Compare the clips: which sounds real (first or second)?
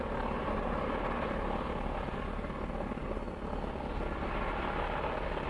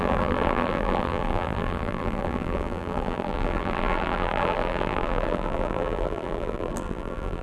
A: first